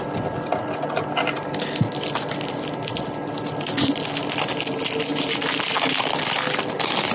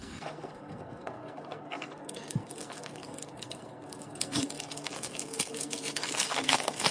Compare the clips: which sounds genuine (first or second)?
first